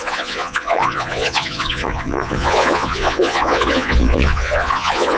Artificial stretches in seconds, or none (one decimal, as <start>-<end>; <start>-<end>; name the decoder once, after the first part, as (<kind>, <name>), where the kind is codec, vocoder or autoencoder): 0.0-5.2 (vocoder, Vocos)